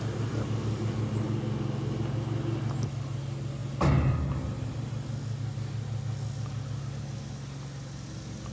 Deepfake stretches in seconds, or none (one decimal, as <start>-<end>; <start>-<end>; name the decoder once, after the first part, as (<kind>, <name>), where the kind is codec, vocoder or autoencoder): none